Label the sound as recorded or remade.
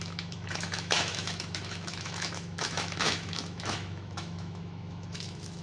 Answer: remade